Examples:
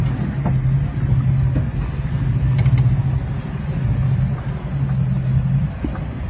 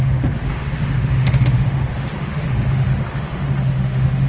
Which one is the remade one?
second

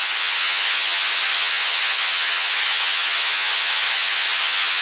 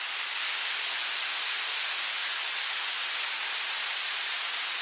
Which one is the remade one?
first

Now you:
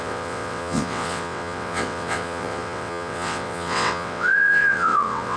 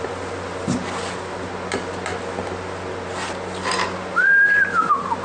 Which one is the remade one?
first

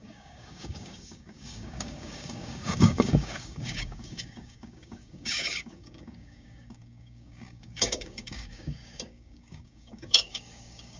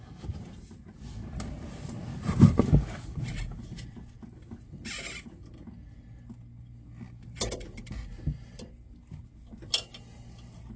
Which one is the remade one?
first